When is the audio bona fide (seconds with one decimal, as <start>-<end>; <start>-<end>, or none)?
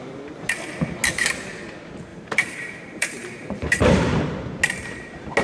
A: 0.0-2.1; 4.2-5.4